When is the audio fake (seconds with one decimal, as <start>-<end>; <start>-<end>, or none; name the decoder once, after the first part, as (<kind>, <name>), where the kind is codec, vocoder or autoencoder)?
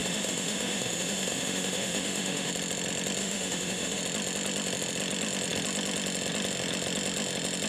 0.0-2.5 (autoencoder, DAC-VAE); 3.2-4.0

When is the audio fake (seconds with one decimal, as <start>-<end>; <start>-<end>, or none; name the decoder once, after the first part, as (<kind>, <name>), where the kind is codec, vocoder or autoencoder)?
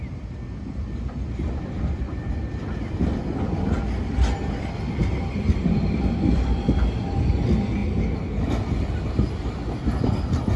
none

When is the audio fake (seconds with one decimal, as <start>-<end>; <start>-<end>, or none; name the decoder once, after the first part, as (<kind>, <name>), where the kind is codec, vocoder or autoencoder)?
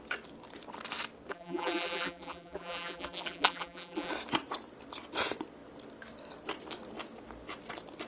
1.3-4.1 (vocoder, BigVGAN v2)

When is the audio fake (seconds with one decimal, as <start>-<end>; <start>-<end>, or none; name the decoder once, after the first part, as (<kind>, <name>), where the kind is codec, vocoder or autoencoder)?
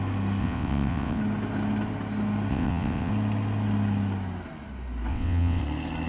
0.4-1.2 (vocoder, WaveNeXt); 2.5-3.1; 5.1-5.6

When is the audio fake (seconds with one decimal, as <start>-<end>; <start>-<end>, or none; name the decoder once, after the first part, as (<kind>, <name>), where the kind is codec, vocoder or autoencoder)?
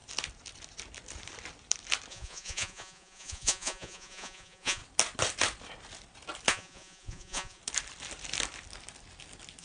2.1-4.8 (vocoder, Vocos); 6.5-7.6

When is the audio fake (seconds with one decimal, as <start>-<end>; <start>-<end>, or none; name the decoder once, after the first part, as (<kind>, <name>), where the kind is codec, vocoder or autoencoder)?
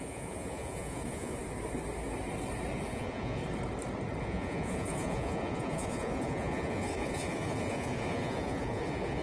0.0-1.4 (vocoder, Vocos); 2.9-3.4; 4.2-9.2